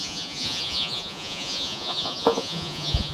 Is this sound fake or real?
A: fake